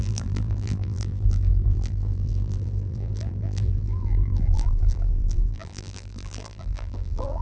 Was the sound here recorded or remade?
remade